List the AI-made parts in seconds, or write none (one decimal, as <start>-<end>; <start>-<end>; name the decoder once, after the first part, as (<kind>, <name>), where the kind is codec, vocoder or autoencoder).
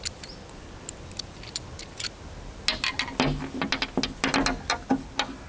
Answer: none